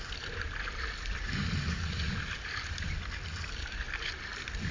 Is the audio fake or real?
real